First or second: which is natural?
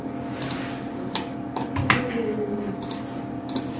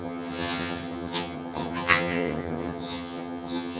first